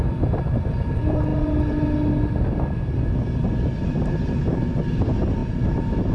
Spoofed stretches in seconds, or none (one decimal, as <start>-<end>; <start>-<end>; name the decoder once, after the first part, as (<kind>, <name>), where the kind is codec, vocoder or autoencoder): none